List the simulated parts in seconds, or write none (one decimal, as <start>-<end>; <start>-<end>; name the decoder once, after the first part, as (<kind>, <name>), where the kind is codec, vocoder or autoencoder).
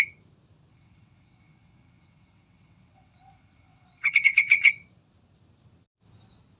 0.7-4.7 (vocoder, WaveNeXt)